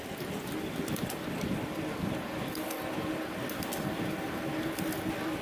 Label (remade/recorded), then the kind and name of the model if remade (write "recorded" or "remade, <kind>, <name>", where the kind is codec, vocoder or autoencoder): recorded